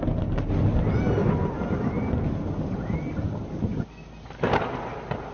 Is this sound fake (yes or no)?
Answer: no